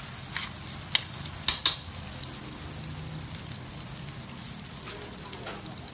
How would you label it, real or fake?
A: real